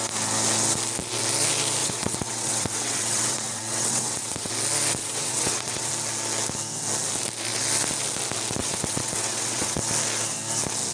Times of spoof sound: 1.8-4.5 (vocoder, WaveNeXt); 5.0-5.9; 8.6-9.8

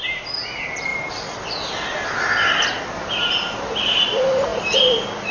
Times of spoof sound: none

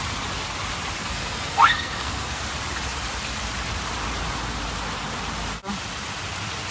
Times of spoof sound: 1.0-2.4 (codec, SNAC)

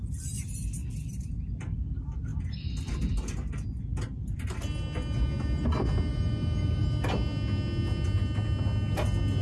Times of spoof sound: 6.1-6.8 (vocoder, BigVGAN v2)

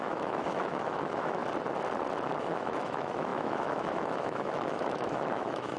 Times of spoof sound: 0.0-1.4 (autoencoder, DAC-VAE); 2.4-5.8

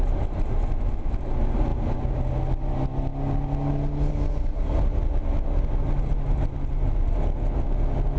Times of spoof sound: none